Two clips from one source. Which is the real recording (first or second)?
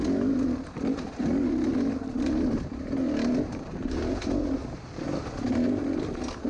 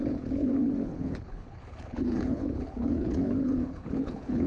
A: first